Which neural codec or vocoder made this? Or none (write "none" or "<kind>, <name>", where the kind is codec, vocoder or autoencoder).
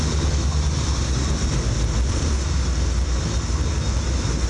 none